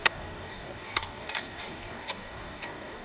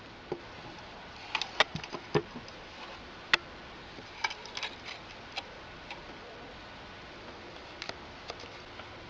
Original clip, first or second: second